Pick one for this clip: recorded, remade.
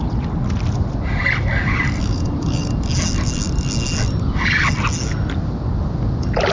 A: recorded